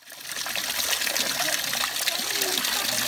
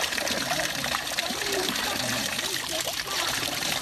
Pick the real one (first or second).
first